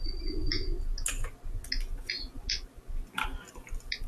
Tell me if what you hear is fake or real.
real